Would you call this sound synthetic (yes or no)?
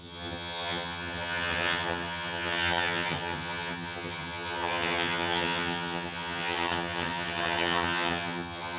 yes